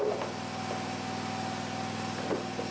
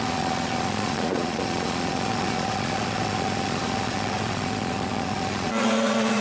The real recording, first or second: first